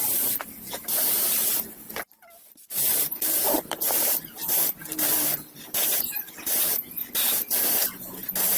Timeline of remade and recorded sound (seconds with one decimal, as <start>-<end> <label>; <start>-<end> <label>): 0.0-3.4 recorded; 3.4-7.2 remade; 7.2-8.6 recorded